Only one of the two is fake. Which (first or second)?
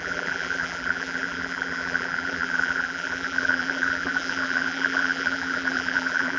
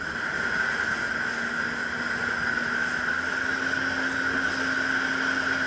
first